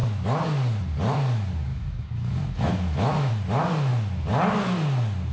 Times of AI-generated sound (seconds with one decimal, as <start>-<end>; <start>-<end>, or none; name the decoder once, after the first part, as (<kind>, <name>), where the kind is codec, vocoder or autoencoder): 1.7-3.3 (autoencoder, DAC-VAE)